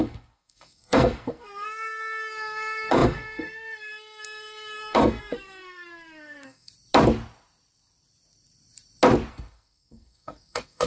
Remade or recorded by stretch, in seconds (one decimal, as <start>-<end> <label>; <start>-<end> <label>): 0.0-6.7 remade; 6.7-9.3 recorded; 9.3-10.9 remade